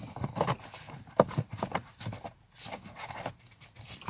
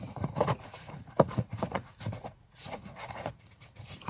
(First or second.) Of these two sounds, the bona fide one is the first